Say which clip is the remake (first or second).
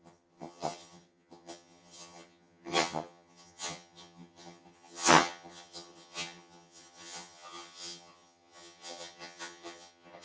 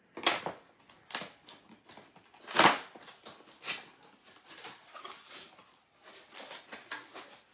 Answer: first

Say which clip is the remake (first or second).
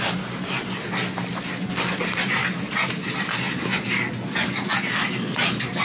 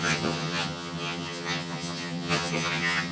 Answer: second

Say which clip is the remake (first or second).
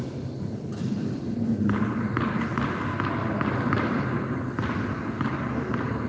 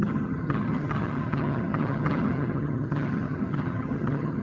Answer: second